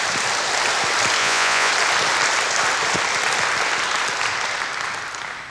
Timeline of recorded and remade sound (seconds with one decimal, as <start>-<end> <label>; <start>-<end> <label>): 0.0-1.2 recorded; 1.2-1.7 remade; 1.7-5.5 recorded